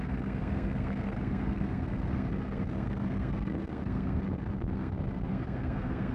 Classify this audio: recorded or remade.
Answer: remade